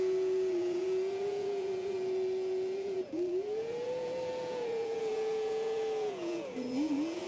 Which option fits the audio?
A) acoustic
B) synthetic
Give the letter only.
B